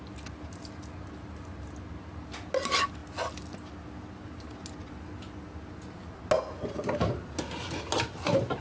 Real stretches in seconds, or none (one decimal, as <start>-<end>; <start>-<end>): 0.0-8.6